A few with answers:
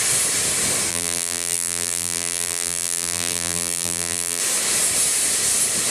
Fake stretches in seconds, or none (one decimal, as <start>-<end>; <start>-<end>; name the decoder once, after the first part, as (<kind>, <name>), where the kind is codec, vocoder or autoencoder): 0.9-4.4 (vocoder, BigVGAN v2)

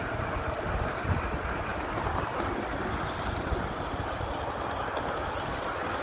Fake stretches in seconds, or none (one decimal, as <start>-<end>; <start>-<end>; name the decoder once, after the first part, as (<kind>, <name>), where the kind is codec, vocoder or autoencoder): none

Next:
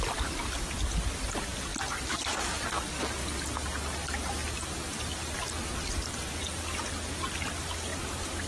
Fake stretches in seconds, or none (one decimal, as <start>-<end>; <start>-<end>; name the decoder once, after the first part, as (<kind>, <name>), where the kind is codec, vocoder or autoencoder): none

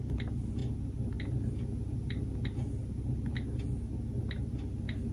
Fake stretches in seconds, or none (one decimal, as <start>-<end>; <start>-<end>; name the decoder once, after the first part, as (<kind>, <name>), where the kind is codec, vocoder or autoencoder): none